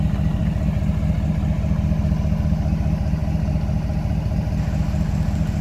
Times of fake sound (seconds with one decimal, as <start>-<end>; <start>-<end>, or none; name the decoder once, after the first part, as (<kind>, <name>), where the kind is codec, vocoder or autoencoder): none